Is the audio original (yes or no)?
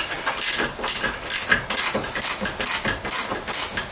yes